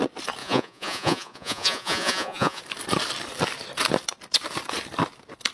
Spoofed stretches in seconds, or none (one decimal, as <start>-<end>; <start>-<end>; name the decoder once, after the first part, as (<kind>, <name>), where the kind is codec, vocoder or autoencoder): 0.4-2.6 (vocoder, Vocos)